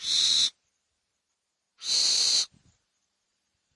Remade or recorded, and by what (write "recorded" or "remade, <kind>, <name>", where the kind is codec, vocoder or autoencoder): remade, vocoder, BigVGAN v2